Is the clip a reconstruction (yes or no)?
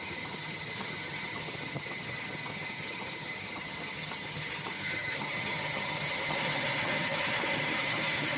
yes